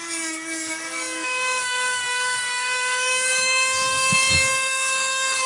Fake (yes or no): yes